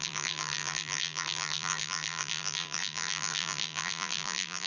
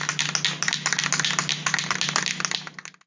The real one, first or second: second